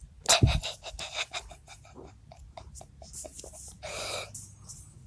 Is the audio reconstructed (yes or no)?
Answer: no